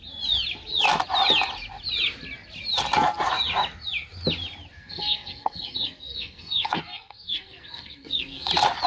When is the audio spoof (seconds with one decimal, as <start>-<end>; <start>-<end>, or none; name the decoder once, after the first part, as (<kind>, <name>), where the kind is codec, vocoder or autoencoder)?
4.8-8.5 (codec, SNAC)